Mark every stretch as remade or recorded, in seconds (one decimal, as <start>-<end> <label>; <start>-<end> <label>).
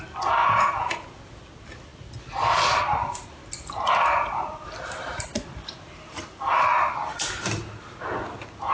0.0-0.4 recorded; 0.4-1.4 remade; 1.4-8.7 recorded